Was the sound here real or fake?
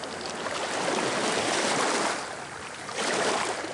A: real